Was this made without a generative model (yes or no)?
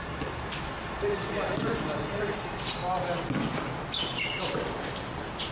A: yes